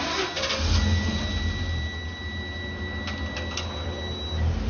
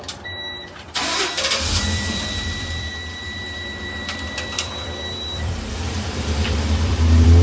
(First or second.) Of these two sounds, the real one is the first